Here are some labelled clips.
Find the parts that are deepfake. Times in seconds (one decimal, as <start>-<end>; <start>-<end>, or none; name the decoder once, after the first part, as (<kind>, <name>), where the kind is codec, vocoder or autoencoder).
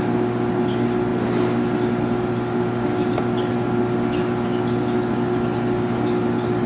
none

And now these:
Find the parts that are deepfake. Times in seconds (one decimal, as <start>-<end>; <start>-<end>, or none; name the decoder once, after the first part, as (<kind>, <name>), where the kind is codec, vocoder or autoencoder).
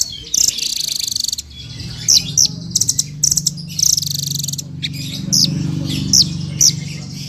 none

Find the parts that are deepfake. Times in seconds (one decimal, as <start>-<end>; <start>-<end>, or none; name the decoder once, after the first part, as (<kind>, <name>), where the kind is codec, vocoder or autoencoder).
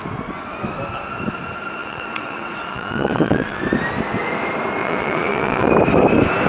1.8-3.6 (vocoder, WaveNeXt); 4.8-5.7